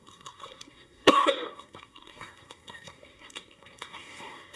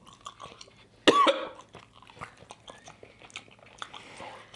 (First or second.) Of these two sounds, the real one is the second